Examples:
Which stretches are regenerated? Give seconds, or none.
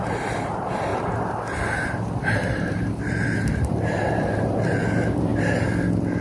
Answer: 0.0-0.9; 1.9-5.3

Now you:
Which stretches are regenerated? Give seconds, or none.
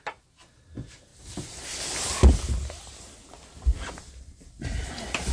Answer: 1.1-2.3; 3.5-4.0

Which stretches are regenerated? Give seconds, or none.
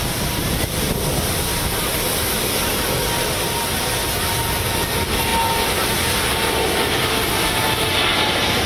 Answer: 8.1-8.7